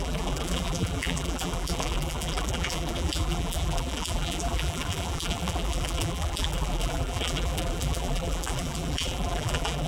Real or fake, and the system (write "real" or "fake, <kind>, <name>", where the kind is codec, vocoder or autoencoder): fake, vocoder, BigVGAN v2